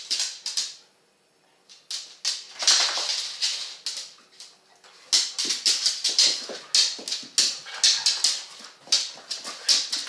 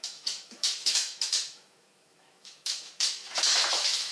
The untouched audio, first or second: first